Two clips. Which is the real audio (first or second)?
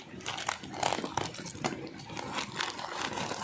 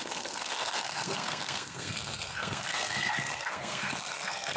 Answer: first